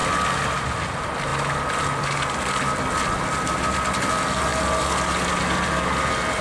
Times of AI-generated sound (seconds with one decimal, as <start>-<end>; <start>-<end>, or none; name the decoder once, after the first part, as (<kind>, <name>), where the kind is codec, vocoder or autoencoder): 0.0-0.6 (vocoder, BigVGAN v2); 1.3-4.1; 4.5-5.4